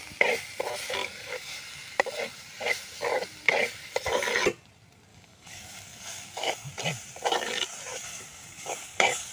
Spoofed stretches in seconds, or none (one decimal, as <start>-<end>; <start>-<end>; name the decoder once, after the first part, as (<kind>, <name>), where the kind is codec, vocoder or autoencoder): 1.0-1.6 (codec, DAC); 5.1-6.7; 7.9-9.3